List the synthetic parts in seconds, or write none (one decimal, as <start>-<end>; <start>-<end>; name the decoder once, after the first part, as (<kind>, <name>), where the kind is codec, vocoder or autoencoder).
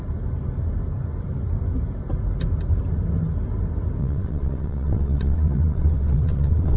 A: 4.0-6.8 (vocoder, WaveNeXt)